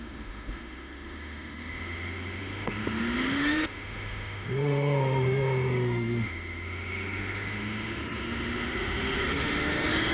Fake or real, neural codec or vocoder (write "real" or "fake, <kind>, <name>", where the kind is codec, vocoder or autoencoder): fake, autoencoder, DAC-VAE